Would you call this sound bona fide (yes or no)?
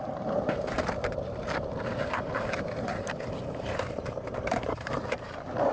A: no